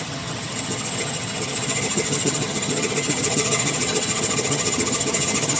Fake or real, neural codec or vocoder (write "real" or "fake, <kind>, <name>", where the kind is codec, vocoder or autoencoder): fake, vocoder, HiFi-GAN